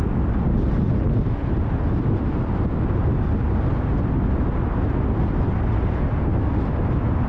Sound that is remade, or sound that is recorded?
recorded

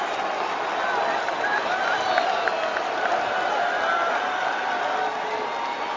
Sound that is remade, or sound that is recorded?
recorded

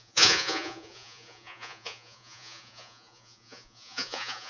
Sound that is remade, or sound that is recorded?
remade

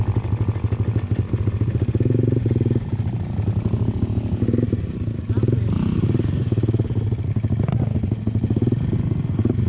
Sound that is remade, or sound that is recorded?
recorded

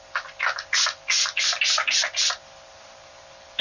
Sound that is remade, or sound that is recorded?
recorded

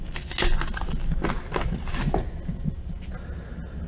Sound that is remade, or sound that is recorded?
recorded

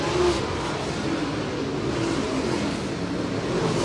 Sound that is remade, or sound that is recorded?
recorded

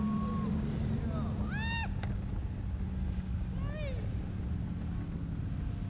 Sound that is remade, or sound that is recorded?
recorded